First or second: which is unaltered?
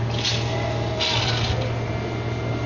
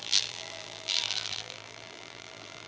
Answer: first